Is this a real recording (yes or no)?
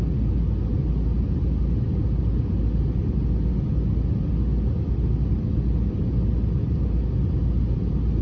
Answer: yes